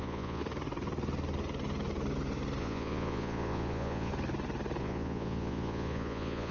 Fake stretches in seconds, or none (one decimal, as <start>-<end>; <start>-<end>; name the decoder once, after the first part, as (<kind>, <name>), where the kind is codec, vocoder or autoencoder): 0.0-0.4 (vocoder, Vocos); 2.6-4.1; 4.8-6.5